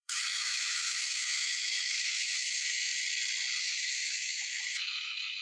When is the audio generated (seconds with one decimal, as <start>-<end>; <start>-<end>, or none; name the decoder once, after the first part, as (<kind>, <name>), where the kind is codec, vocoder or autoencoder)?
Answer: 0.0-2.9 (autoencoder, DAC-VAE); 3.6-5.4